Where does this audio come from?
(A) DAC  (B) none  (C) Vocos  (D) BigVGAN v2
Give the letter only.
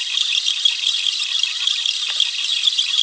D